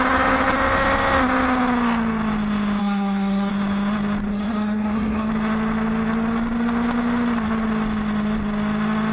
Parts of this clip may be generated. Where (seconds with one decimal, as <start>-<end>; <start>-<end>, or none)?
2.8-3.5; 4.3-5.3